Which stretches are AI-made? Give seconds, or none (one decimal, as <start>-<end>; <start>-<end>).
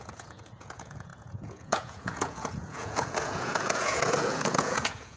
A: 0.0-5.2